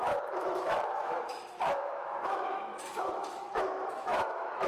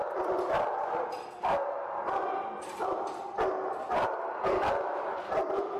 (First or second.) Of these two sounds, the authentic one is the second